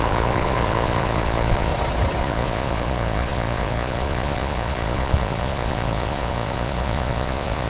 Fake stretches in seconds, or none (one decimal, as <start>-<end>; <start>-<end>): 0.0-1.7; 2.2-7.7